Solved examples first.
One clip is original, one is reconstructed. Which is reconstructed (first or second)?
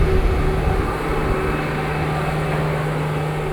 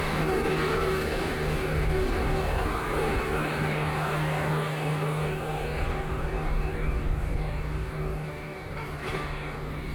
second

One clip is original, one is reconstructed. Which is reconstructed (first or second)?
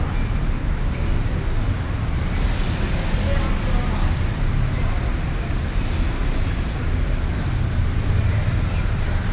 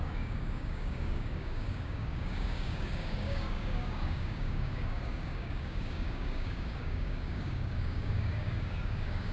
second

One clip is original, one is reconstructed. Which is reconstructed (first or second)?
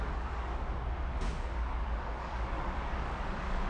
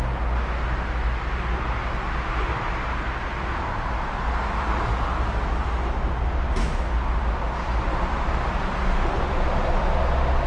first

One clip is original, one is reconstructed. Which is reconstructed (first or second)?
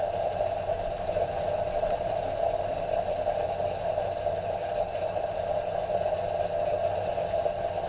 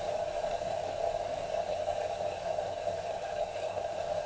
second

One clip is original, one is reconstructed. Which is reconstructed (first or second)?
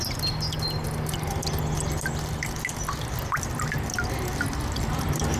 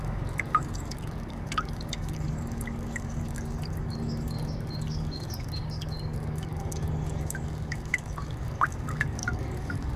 second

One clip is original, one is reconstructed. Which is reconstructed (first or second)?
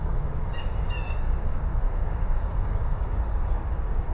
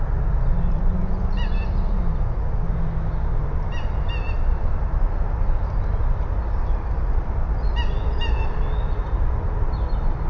first